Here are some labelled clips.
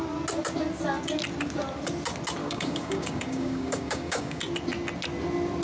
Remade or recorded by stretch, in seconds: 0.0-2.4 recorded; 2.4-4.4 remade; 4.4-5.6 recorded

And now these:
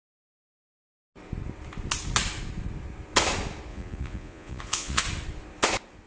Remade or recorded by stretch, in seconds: 0.0-3.7 recorded; 3.7-5.0 remade; 5.0-6.1 recorded

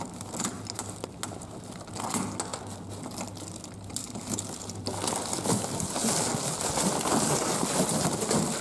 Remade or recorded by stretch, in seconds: 0.0-8.6 recorded

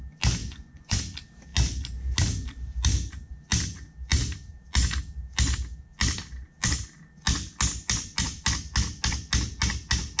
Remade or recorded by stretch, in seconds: 0.0-0.4 recorded; 0.4-1.0 remade; 1.0-10.2 recorded

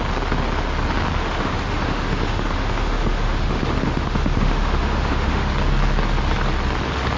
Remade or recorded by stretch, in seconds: 0.0-1.2 recorded; 1.2-5.5 remade; 5.5-7.2 recorded

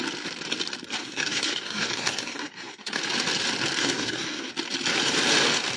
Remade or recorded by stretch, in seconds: 0.0-1.0 recorded; 1.0-3.0 remade; 3.0-3.8 recorded; 3.8-4.5 remade; 4.5-5.8 recorded

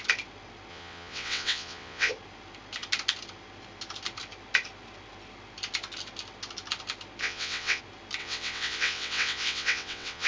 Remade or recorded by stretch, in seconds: 0.0-0.7 recorded; 0.7-2.1 remade; 2.1-7.2 recorded; 7.2-7.8 remade; 7.8-8.2 recorded; 8.2-10.3 remade

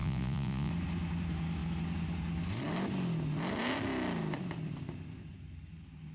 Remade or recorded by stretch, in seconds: 0.0-0.7 remade; 0.7-6.1 recorded